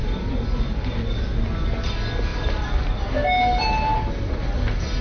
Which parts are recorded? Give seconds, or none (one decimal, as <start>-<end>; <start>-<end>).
0.0-5.0